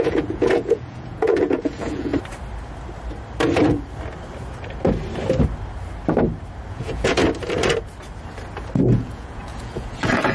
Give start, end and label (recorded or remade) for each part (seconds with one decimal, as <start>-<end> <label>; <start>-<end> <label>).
0.0-2.1 remade; 2.1-6.7 recorded; 6.7-7.2 remade; 7.2-8.8 recorded; 8.8-10.3 remade